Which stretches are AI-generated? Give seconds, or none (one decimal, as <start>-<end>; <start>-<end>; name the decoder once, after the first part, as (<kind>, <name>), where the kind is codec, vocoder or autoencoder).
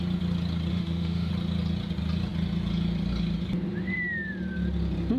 0.7-1.3 (autoencoder, DAC-VAE)